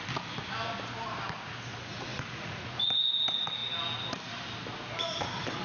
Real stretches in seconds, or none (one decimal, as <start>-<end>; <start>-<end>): 0.0-2.1; 2.8-5.6